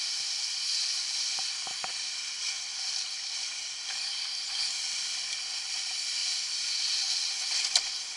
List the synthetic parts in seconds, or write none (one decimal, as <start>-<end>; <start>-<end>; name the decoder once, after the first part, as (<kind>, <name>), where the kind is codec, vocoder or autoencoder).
none